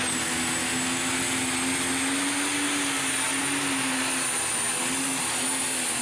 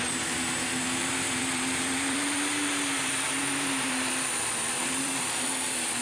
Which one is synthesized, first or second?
second